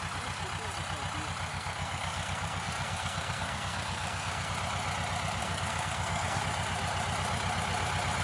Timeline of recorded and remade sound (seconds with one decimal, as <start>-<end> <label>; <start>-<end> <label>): 0.0-1.5 recorded; 1.5-4.5 remade; 4.5-5.4 recorded; 5.4-6.4 remade; 6.4-8.2 recorded